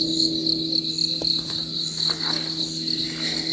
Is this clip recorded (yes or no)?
yes